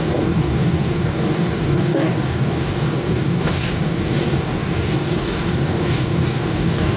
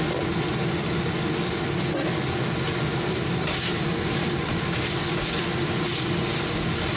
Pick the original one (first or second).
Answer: second